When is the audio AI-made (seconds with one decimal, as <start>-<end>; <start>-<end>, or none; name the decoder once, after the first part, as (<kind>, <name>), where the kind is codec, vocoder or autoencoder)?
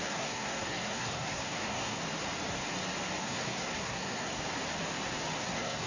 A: 0.0-2.0 (codec, SNAC); 3.2-4.4; 5.4-5.9